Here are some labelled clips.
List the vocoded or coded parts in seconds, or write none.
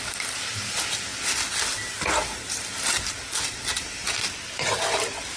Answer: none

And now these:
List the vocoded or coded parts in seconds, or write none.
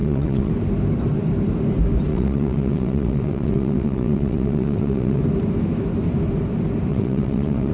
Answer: 0.0-0.5 (vocoder, WaveNeXt); 2.1-5.2; 6.9-7.7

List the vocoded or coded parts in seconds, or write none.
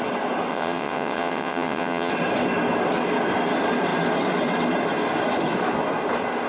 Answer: 0.5-2.1 (vocoder, WaveNeXt)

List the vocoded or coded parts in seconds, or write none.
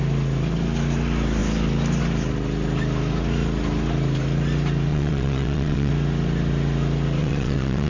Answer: 4.9-5.9 (vocoder, WaveNeXt); 7.2-7.9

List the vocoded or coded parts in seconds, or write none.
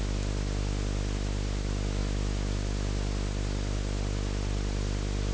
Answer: none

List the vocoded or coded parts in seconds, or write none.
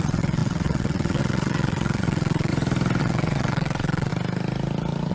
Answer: 0.0-2.5 (vocoder, WaveNeXt); 3.0-4.1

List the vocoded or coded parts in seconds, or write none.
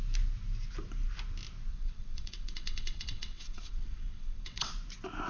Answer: 1.7-4.7 (vocoder, WaveNeXt)